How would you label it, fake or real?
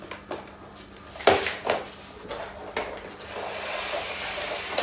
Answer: real